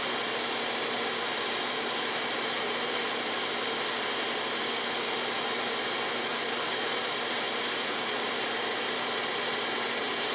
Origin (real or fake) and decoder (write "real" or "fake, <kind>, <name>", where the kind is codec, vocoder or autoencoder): real